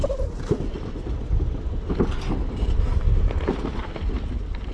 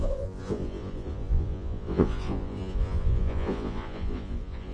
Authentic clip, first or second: first